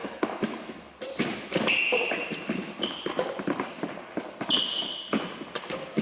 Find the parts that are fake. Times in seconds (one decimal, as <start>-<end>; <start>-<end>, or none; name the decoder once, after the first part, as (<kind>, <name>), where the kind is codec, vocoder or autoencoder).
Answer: 0.0-0.9 (autoencoder, DAC-VAE)